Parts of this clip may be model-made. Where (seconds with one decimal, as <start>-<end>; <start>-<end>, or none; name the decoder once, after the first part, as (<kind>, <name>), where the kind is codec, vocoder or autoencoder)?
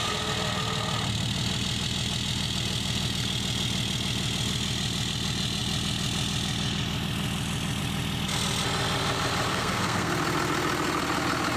9.5-10.1 (codec, SNAC)